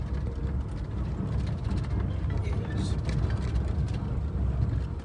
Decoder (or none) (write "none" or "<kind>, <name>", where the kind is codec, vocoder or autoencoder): none